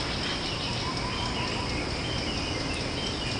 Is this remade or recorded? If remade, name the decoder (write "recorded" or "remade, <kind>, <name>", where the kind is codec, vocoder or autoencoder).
recorded